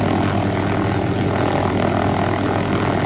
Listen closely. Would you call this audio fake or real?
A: real